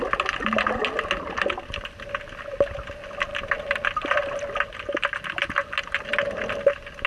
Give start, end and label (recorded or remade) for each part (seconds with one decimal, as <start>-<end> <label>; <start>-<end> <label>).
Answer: 0.0-7.1 recorded